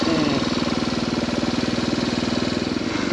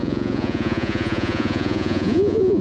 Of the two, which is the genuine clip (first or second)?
first